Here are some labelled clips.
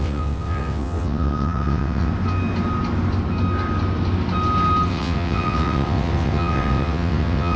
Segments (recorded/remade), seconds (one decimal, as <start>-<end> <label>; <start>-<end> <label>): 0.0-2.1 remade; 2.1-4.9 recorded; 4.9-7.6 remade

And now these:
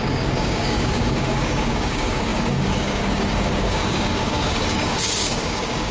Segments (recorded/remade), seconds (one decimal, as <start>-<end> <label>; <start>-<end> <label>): 0.0-5.9 remade

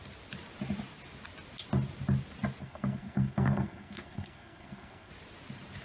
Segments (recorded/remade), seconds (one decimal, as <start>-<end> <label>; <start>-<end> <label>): 0.0-2.6 recorded; 2.6-5.1 remade; 5.1-5.8 recorded